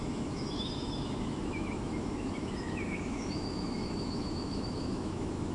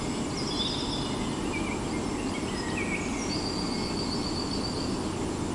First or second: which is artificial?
first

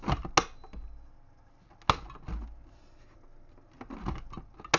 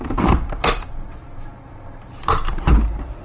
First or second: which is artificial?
second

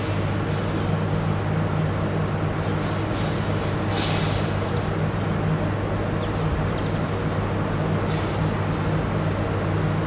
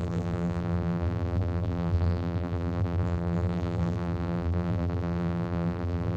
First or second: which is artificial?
second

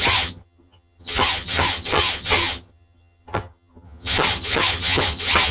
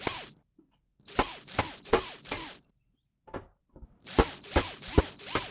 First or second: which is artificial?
first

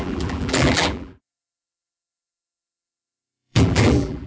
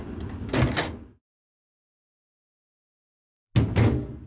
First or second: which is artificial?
first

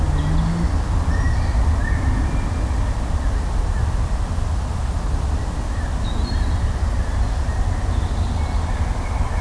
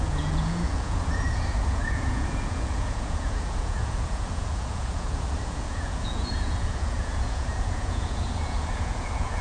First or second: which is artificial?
second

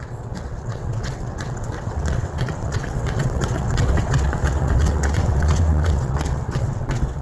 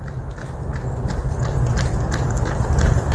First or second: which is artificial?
first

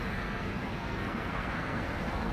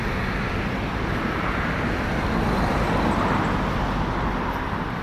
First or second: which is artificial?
first